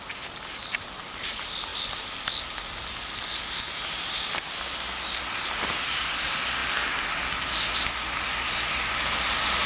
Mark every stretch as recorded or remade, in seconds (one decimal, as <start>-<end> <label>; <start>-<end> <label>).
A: 0.0-9.7 recorded